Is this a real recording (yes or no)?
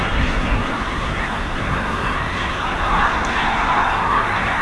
no